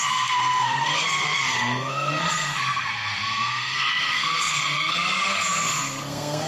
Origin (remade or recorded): remade